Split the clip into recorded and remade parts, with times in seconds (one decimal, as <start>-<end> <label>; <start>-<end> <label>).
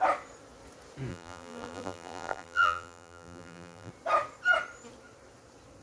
0.0-1.1 recorded; 1.1-3.9 remade; 3.9-5.8 recorded